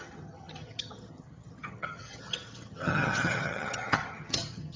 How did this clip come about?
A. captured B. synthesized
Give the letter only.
B